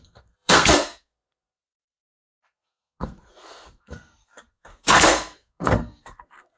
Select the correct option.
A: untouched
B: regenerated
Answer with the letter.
B